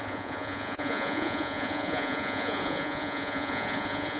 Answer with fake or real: fake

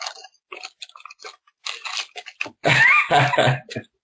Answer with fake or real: real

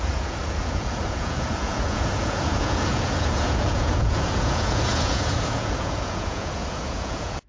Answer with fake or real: fake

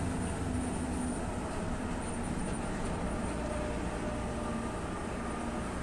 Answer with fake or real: real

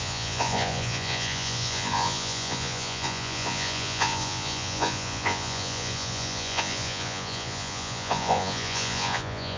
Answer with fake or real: fake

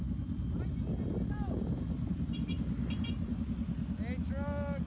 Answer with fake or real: real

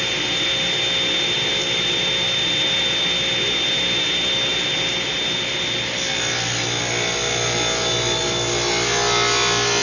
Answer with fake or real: real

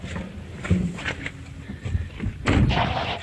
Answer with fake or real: real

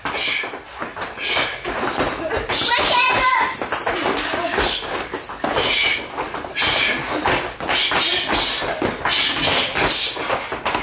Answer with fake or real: real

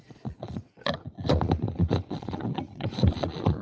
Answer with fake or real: fake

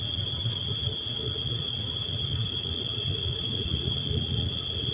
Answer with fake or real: fake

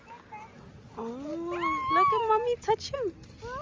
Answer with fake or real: real